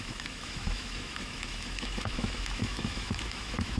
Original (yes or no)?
no